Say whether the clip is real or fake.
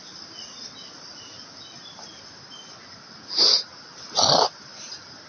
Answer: fake